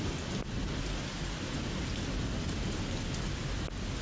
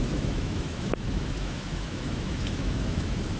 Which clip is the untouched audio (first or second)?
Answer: first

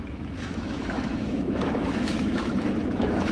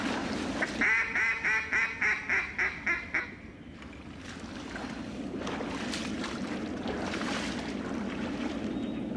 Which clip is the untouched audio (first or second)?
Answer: second